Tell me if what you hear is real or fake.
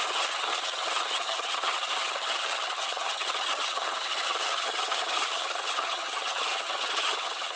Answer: fake